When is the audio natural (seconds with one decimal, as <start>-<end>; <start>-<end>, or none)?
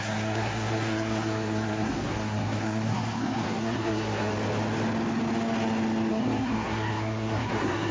4.3-6.1